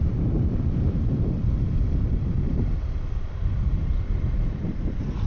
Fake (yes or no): yes